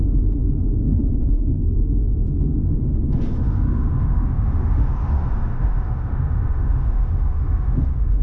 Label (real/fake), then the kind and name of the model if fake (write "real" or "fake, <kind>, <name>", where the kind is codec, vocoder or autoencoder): fake, autoencoder, DAC-VAE